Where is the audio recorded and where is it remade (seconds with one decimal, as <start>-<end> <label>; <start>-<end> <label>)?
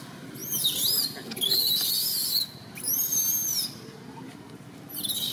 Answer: 0.0-0.4 recorded; 0.4-2.4 remade; 2.4-5.3 recorded